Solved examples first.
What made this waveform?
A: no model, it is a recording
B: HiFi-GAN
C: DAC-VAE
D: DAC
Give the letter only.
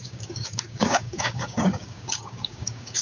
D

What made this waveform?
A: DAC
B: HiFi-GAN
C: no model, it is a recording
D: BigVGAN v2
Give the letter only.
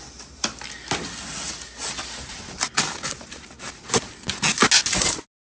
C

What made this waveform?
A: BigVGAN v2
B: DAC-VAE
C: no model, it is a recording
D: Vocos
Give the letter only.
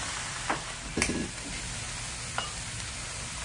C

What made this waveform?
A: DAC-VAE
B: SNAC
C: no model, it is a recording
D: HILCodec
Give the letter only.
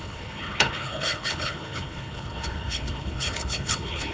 D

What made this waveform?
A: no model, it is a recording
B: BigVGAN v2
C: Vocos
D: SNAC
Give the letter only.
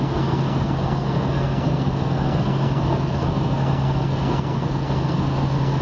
D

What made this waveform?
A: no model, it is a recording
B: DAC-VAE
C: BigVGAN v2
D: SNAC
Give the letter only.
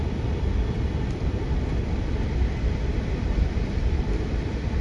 C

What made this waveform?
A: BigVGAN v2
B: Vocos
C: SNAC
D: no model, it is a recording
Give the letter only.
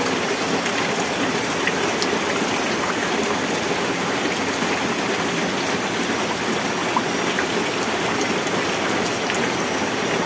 D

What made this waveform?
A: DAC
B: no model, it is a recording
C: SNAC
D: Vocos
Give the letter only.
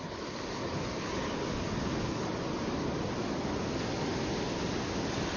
B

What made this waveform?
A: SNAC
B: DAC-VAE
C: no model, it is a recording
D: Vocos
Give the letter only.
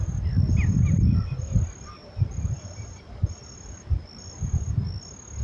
C